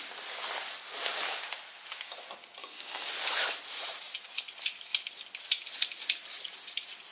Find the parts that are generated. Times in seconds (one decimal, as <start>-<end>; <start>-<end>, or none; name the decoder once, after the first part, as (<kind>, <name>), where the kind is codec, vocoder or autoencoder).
2.6-3.1 (codec, DAC)

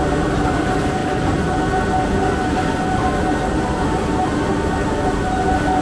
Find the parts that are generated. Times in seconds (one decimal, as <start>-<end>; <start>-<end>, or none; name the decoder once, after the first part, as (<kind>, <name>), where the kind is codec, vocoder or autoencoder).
none

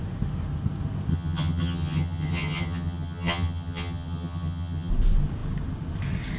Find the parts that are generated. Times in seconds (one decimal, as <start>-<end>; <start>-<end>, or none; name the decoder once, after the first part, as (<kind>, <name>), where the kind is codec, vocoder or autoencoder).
1.1-4.9 (vocoder, HiFi-GAN)

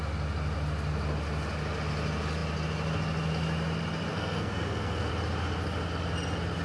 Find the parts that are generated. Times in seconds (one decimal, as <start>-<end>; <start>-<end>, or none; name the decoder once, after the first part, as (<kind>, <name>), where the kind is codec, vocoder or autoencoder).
4.1-5.1 (codec, SNAC)

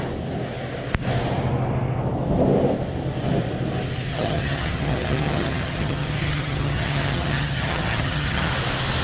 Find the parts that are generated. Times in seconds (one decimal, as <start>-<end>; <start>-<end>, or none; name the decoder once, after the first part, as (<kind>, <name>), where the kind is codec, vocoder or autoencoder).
4.1-8.5 (vocoder, HiFi-GAN)

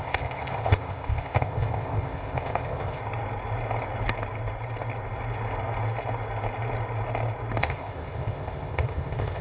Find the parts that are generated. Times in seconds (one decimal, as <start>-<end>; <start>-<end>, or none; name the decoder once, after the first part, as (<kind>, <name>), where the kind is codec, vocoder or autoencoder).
0.0-3.0 (codec, ZipCodec); 7.6-9.4

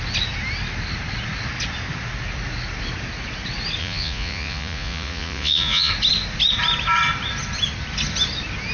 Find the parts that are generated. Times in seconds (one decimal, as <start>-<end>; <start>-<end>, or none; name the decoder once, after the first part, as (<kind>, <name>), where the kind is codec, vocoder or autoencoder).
3.8-5.9 (vocoder, Vocos)